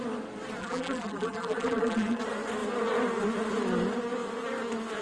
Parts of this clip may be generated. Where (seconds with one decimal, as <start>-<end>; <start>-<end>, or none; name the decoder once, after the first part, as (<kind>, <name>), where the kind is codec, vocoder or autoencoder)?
0.6-2.2 (vocoder, BigVGAN v2)

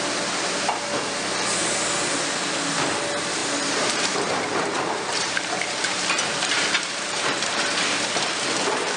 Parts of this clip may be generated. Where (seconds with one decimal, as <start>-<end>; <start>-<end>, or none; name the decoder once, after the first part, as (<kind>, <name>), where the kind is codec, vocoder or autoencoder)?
3.4-8.5 (vocoder, BigVGAN v2)